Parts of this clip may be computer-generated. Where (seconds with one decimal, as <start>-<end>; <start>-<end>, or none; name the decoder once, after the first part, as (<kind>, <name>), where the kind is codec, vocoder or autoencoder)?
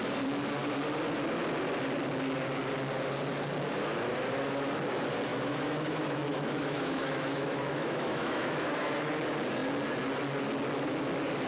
5.3-9.1 (autoencoder, DAC-VAE)